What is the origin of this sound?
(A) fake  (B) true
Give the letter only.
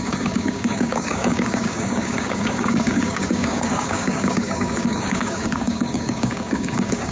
A